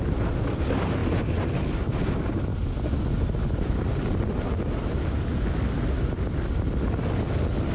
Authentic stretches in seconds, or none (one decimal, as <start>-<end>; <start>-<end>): 0.0-7.7